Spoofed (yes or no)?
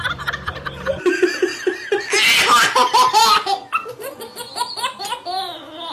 yes